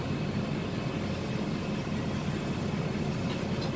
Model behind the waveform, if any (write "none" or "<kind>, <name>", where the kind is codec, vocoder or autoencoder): none